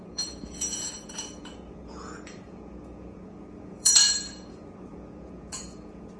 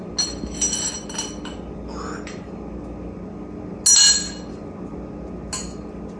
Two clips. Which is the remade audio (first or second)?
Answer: first